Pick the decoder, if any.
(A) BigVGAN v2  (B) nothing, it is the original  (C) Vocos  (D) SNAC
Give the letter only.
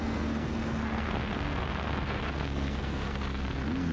D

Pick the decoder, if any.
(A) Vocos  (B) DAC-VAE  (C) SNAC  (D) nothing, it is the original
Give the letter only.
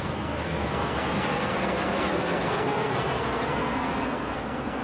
C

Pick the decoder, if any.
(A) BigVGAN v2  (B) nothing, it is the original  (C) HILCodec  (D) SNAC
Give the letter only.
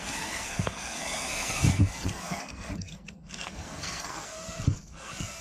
D